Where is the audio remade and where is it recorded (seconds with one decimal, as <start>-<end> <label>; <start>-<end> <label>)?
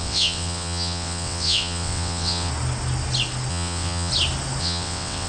0.0-2.5 remade; 2.5-3.5 recorded; 3.5-4.1 remade; 4.1-4.6 recorded; 4.6-5.3 remade